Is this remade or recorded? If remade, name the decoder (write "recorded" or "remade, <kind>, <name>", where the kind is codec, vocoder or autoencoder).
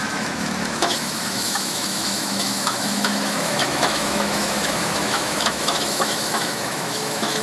remade, autoencoder, DAC-VAE